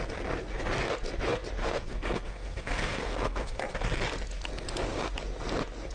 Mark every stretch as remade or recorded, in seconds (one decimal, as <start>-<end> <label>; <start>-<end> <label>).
0.0-1.6 recorded; 1.6-3.6 remade; 3.6-5.9 recorded